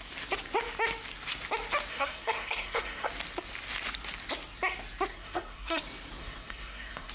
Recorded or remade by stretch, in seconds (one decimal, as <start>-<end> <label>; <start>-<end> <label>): 0.0-1.9 recorded; 1.9-3.1 remade; 3.1-5.1 recorded; 5.1-5.8 remade; 5.8-6.2 recorded; 6.2-7.1 remade